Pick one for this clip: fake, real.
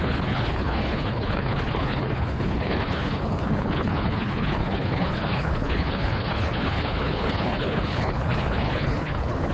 fake